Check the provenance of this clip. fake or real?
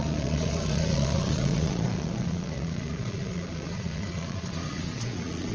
fake